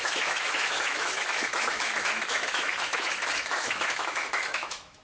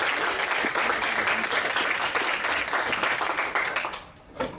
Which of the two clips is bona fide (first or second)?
second